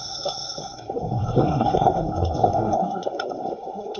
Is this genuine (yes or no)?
no